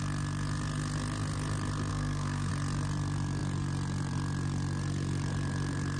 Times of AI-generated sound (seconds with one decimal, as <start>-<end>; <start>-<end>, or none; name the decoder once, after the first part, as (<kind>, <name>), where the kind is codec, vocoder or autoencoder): 1.9-2.5 (codec, SNAC)